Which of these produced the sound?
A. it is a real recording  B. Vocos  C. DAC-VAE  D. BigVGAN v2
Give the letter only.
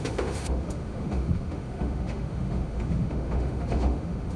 C